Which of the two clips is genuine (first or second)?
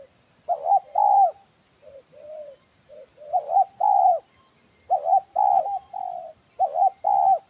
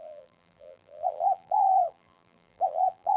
first